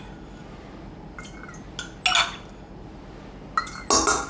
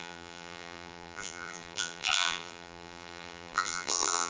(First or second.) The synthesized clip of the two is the second